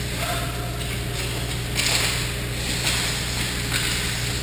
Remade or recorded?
recorded